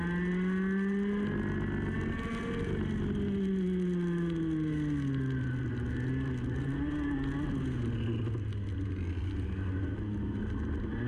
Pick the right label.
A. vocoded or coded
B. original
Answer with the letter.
B